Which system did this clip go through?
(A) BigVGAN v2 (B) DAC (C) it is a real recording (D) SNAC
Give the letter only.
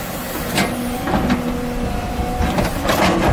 C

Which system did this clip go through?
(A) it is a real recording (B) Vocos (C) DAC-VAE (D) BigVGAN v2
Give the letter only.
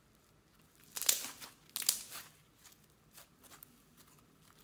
A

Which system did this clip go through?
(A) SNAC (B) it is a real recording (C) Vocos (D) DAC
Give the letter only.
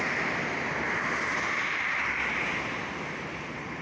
B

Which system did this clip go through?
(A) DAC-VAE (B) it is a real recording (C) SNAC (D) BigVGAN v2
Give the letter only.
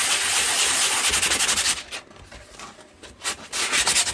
B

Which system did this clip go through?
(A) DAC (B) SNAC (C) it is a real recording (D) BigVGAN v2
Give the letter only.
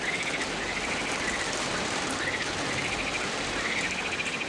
C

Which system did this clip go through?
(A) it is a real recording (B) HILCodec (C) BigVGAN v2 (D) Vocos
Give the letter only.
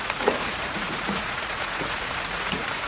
D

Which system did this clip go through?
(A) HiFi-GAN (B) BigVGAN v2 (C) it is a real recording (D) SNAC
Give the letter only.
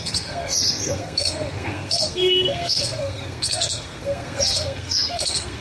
D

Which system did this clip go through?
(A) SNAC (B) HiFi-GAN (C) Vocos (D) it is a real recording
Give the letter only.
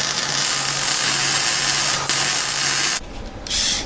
D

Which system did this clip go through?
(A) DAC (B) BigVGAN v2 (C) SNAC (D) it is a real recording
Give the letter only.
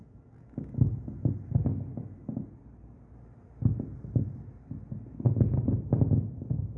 D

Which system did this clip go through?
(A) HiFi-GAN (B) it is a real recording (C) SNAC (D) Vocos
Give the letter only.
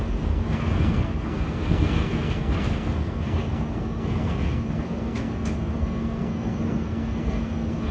C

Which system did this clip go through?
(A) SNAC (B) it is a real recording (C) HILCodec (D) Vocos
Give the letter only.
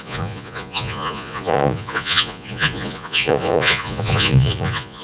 D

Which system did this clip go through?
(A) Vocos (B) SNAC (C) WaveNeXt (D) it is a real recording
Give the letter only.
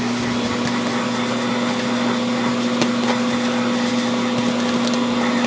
D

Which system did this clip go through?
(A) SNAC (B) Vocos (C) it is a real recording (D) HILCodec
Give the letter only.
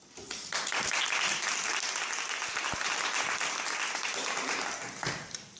C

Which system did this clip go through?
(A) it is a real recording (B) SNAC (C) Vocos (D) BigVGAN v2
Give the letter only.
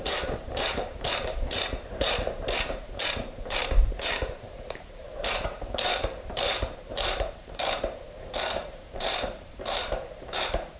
D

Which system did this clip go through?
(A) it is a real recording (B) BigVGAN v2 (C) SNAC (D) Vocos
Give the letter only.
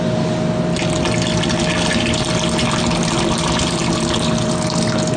A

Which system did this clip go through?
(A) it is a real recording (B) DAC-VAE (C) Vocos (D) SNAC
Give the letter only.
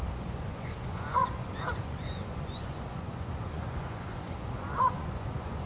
C